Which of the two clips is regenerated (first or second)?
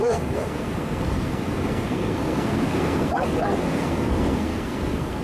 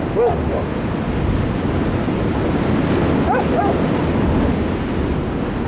first